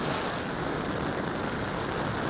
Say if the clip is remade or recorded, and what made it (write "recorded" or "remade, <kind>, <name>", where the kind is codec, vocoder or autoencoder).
recorded